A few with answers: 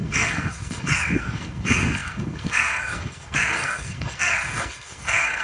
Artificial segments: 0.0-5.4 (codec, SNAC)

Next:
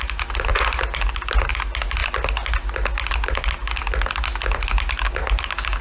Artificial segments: none

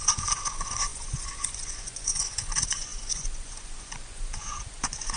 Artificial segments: 0.0-5.2 (vocoder, Vocos)

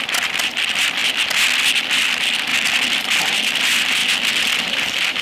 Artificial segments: 0.0-1.0 (vocoder, BigVGAN v2); 1.8-2.5; 3.2-5.2

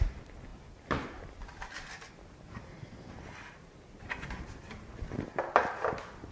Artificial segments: 0.5-1.2 (vocoder, BigVGAN v2); 3.6-4.6

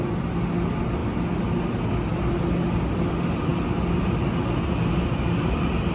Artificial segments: none

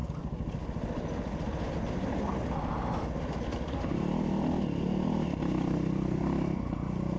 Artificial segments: none

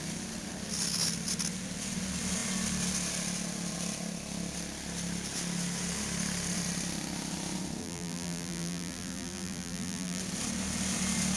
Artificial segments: 7.8-10.2 (vocoder, BigVGAN v2)